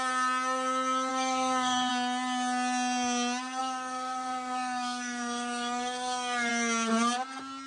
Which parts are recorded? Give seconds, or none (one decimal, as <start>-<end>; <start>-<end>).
0.0-1.1; 1.9-3.6; 6.5-7.7